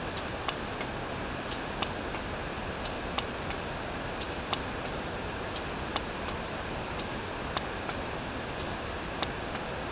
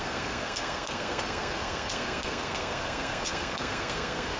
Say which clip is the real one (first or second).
first